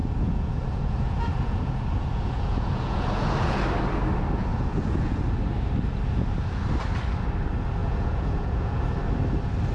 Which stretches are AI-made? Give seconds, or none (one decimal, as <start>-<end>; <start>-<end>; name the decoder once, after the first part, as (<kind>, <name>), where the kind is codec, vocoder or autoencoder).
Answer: 0.0-3.6 (vocoder, Vocos); 4.5-5.2; 7.8-8.9